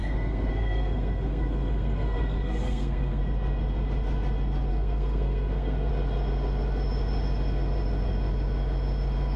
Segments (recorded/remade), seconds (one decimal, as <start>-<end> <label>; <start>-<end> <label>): 0.0-3.2 remade; 3.2-4.7 recorded; 4.7-5.9 remade; 5.9-9.4 recorded

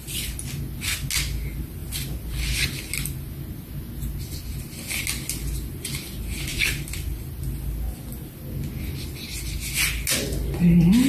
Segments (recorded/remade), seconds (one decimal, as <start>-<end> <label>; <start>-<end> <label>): 0.0-11.1 recorded

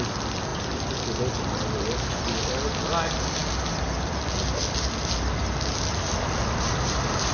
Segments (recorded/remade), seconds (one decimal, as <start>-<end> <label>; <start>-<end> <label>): 0.0-7.3 recorded

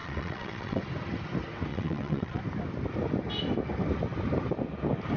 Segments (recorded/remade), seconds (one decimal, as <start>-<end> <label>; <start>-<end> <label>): 0.0-0.8 remade; 0.8-1.7 recorded; 1.7-2.4 remade; 2.4-5.2 recorded

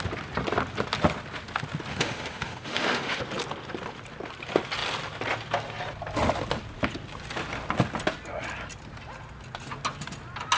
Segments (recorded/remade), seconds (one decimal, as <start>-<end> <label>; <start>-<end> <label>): 0.0-1.9 recorded; 1.9-3.2 remade; 3.2-10.6 recorded

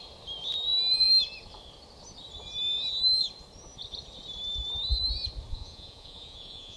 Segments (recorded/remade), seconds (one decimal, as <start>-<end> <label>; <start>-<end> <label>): 0.0-5.5 recorded; 5.5-6.8 remade